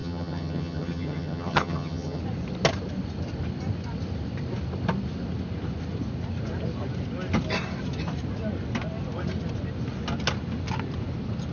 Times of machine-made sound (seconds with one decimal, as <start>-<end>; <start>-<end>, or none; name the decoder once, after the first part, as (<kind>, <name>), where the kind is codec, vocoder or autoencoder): 0.0-2.2 (vocoder, HiFi-GAN)